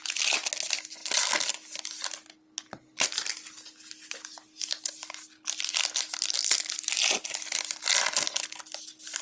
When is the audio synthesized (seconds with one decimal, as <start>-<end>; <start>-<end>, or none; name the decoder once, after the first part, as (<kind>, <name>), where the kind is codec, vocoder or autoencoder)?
none